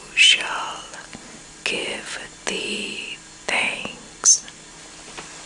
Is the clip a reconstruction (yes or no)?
no